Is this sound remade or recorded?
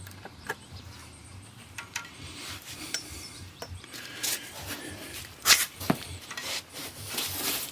remade